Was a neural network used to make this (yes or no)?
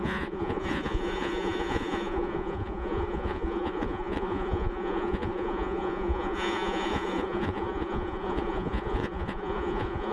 yes